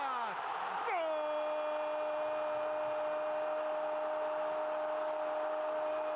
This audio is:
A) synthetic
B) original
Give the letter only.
B